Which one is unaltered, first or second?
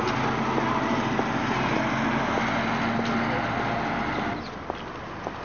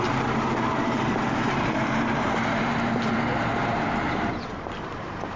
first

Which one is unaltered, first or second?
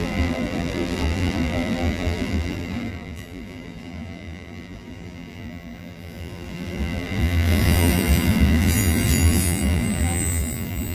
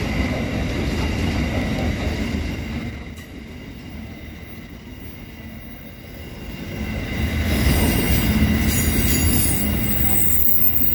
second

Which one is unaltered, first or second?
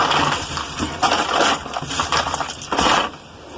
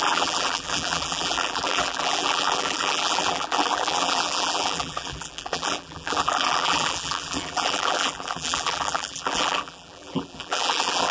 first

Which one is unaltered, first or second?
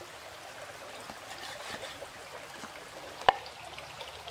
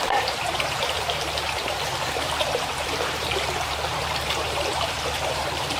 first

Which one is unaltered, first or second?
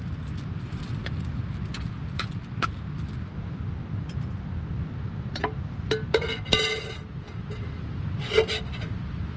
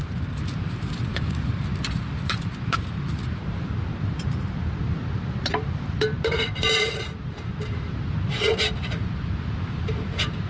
first